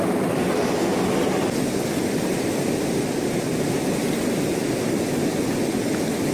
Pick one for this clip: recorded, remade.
recorded